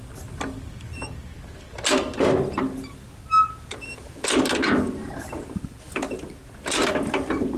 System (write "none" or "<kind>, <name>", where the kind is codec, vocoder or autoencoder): none